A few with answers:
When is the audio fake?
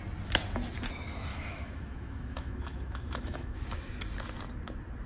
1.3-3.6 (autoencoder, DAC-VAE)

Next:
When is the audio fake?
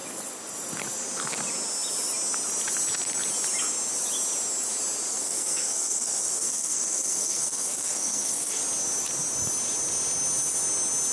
5.1-8.6 (codec, SNAC)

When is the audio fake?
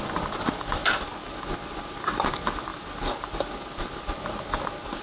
none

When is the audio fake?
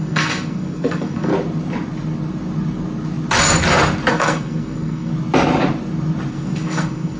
0.0-1.3 (codec, SNAC); 4.1-5.1; 6.3-7.2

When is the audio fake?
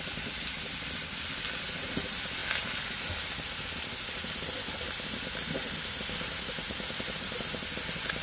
none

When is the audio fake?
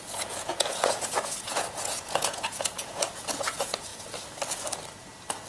0.0-3.9 (vocoder, Vocos)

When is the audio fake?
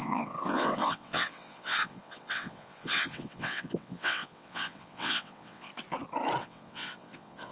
0.0-5.7 (vocoder, WaveNeXt); 6.4-7.5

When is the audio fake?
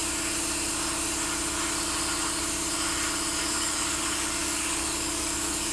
3.4-5.7 (codec, DAC)